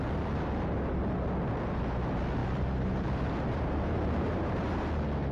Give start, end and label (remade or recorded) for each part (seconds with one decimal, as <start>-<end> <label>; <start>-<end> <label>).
0.0-2.4 recorded; 2.4-4.8 remade; 4.8-5.3 recorded